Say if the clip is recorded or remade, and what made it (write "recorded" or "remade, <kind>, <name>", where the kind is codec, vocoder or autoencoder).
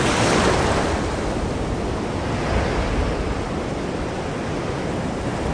recorded